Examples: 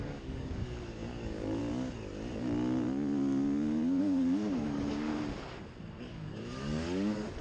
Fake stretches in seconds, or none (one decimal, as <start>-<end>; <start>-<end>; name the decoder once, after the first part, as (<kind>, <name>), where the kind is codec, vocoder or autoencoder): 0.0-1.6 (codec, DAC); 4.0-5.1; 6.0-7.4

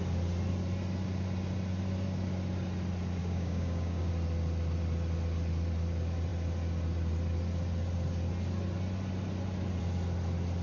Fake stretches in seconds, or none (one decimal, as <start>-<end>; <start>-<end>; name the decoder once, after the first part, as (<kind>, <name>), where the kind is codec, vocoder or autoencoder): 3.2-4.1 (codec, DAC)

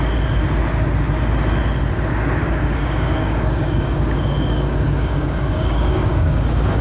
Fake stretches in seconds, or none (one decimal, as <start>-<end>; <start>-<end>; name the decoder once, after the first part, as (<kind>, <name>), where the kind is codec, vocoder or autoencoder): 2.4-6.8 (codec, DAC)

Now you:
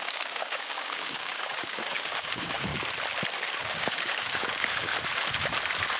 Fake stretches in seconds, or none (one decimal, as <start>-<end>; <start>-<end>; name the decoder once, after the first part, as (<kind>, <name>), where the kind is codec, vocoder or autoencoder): 0.0-2.7 (codec, DAC); 3.6-4.9